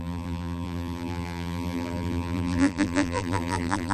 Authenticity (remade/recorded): remade